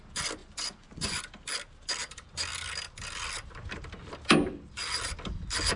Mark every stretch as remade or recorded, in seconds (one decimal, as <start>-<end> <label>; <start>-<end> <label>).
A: 0.0-0.4 recorded; 0.4-1.2 remade; 1.2-5.8 recorded